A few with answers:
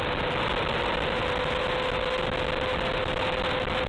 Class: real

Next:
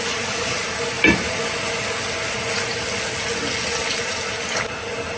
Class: real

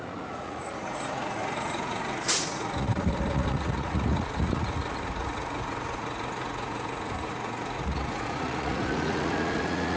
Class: fake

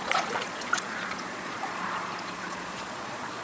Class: fake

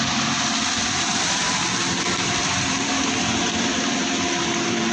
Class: fake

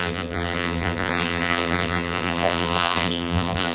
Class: fake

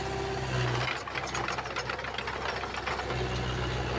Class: real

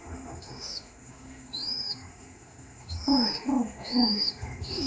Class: fake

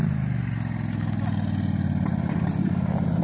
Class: real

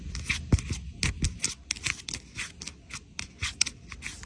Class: real